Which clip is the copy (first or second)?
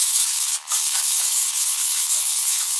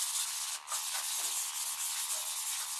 first